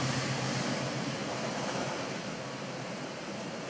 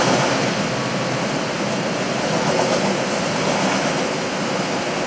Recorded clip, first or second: second